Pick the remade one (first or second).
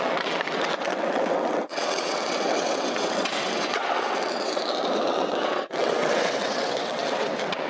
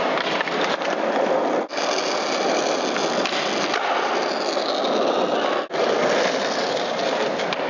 first